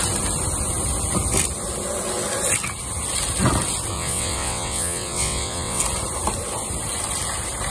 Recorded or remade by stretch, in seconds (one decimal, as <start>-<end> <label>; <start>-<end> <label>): 0.0-3.9 recorded; 3.9-5.8 remade; 5.8-7.7 recorded